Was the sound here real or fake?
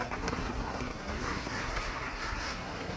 fake